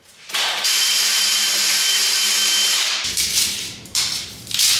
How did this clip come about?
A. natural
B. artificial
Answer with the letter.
B